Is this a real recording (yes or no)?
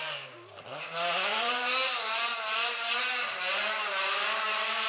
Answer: no